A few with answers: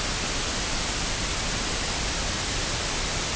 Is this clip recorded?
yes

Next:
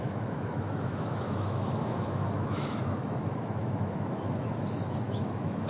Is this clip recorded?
no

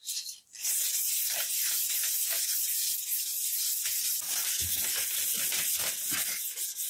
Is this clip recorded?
yes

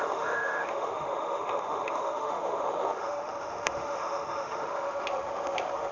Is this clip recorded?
no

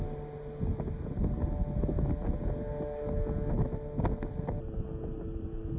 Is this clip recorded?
yes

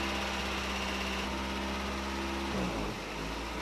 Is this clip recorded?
yes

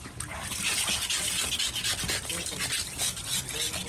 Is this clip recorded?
yes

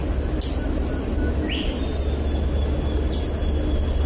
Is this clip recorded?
yes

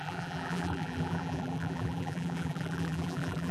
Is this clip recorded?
no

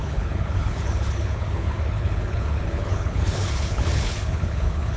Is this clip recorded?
no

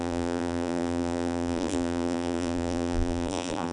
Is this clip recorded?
no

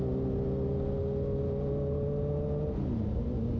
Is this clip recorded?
yes